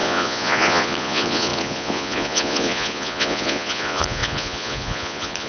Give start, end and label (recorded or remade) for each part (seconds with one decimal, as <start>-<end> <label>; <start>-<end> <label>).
0.0-5.5 remade